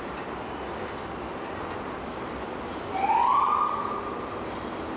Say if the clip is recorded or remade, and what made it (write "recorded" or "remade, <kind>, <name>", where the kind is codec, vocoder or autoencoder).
recorded